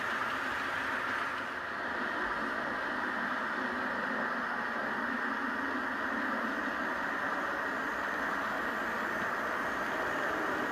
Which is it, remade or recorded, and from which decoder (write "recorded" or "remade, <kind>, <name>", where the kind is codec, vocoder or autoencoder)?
recorded